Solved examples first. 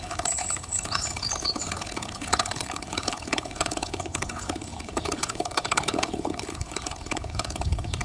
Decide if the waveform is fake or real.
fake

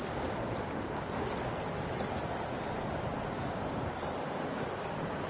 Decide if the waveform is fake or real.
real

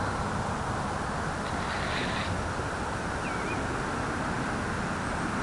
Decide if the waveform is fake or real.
real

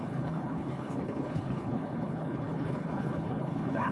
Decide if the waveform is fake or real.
fake